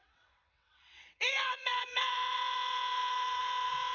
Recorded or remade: remade